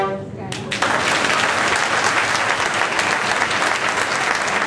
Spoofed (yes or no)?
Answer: no